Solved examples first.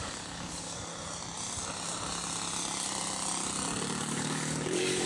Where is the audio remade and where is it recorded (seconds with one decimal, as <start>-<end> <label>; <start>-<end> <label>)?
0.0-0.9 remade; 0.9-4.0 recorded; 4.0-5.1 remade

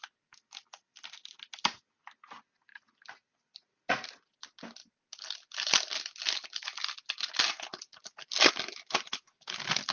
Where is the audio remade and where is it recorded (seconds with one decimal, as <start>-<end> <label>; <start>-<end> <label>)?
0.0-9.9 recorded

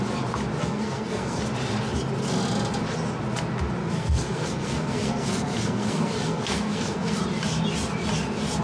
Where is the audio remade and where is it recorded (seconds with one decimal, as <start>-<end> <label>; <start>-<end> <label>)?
0.0-0.6 recorded; 0.6-1.4 remade; 1.4-3.8 recorded; 3.8-7.2 remade; 7.2-8.6 recorded